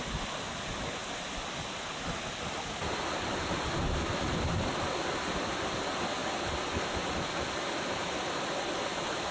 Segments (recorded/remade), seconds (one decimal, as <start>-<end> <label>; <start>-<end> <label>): 0.0-9.3 recorded